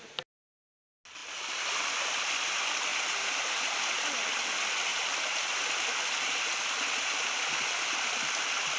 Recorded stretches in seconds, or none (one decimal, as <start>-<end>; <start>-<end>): 0.0-8.8